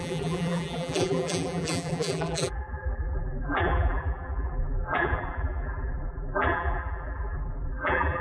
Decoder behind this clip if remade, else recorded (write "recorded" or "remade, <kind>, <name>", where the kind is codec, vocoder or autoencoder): remade, vocoder, BigVGAN v2